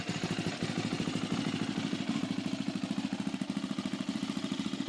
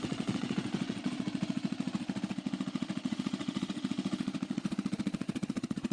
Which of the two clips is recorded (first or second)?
first